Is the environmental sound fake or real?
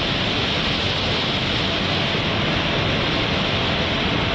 real